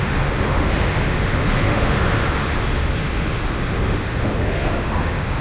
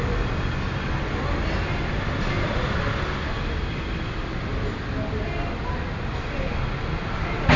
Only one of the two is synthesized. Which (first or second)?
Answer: first